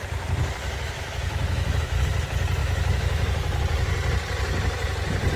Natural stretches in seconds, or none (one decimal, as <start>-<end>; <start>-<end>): 0.0-0.6; 2.0-2.6; 3.6-5.4